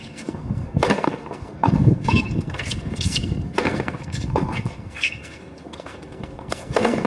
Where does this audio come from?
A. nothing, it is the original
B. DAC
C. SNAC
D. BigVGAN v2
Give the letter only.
C